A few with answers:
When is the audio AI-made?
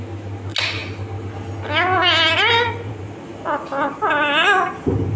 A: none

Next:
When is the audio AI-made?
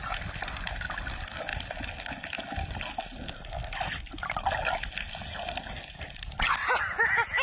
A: none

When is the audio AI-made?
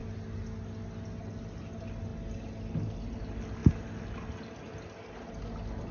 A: none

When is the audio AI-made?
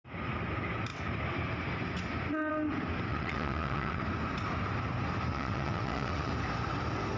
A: 3.1-4.0 (vocoder, WaveNeXt); 5.3-6.3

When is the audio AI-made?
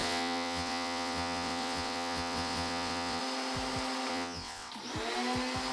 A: 0.0-3.2 (vocoder, WaveNeXt); 4.1-4.7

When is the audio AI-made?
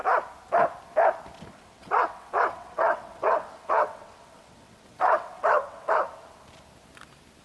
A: 1.5-5.9 (vocoder, WaveNeXt)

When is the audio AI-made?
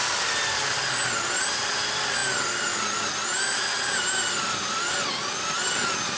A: none